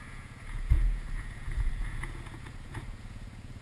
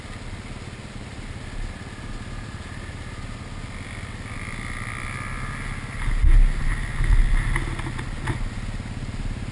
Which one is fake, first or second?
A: first